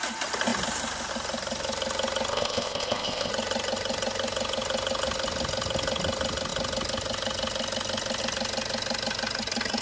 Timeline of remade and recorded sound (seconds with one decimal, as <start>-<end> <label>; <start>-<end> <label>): 0.0-2.3 recorded; 2.3-3.3 remade; 3.3-9.8 recorded